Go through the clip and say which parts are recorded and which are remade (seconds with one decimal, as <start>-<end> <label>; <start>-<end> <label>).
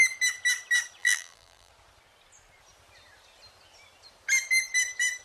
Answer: 0.0-1.0 recorded; 1.0-1.7 remade; 1.7-5.2 recorded